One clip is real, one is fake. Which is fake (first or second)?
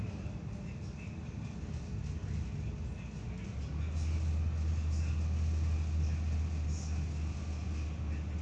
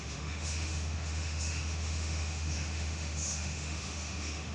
second